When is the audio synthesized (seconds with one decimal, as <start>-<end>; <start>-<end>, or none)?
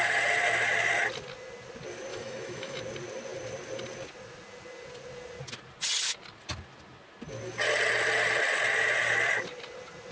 2.1-2.8